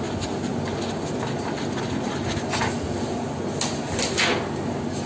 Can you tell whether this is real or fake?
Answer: real